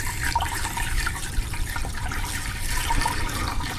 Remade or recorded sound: remade